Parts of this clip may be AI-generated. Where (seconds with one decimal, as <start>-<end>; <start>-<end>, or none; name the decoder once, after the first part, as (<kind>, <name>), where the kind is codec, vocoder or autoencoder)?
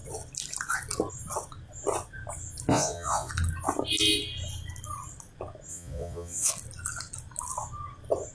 2.7-3.3 (vocoder, Vocos); 5.7-6.5